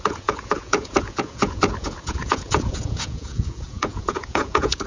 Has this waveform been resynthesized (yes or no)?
yes